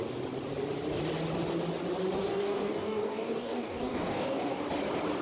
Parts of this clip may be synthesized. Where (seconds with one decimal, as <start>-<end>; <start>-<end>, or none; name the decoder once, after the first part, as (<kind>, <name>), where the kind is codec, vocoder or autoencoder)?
2.2-4.6 (codec, DAC)